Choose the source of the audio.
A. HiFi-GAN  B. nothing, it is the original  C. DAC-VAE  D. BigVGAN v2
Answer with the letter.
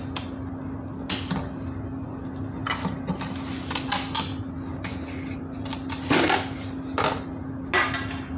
B